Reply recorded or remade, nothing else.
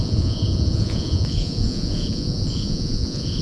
remade